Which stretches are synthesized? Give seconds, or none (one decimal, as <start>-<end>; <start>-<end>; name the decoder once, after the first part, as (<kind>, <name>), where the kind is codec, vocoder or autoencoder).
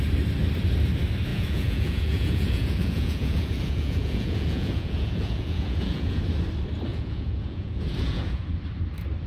1.3-6.2 (vocoder, Vocos); 6.9-8.6